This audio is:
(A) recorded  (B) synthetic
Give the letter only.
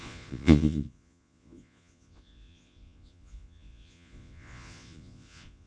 B